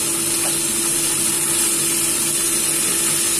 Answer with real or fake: real